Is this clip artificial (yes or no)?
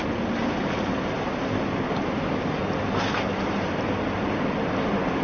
no